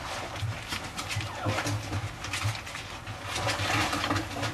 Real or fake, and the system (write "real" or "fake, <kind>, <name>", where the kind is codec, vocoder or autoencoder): real